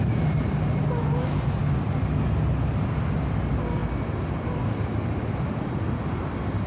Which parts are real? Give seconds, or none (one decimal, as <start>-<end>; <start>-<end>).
0.0-6.7